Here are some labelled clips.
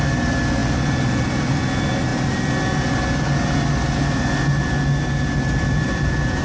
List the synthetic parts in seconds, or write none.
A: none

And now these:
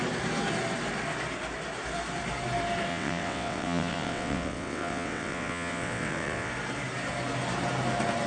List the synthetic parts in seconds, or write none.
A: 2.9-6.5 (vocoder, WaveNeXt)